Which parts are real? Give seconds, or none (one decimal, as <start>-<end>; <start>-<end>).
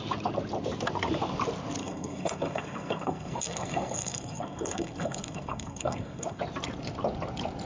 0.0-1.8; 6.4-7.7